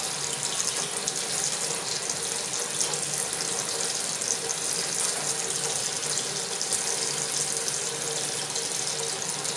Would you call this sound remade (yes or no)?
no